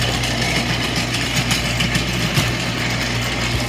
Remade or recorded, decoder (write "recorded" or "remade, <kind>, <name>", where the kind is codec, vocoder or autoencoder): recorded